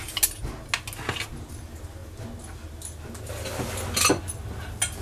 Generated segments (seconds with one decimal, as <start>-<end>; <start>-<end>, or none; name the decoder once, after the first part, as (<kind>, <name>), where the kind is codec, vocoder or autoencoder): none